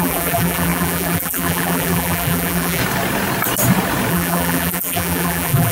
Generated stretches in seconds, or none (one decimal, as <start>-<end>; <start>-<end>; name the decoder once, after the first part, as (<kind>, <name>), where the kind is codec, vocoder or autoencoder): 0.0-2.8 (vocoder, BigVGAN v2); 4.1-5.7